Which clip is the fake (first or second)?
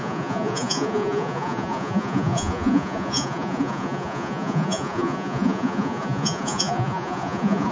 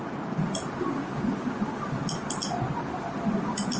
first